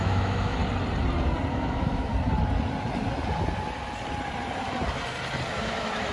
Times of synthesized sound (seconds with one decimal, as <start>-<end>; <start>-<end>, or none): 0.0-0.6; 1.5-2.1; 5.5-6.1